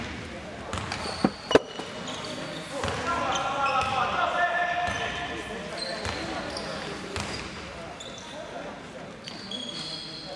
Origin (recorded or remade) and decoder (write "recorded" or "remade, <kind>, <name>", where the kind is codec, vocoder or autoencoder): recorded